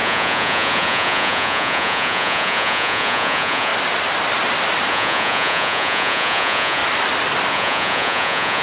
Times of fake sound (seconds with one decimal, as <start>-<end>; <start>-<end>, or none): 0.0-3.7; 4.9-6.8; 7.5-8.6